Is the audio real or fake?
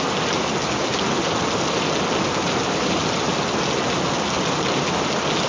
real